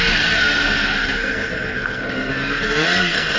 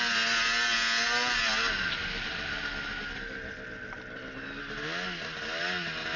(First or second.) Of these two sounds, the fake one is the first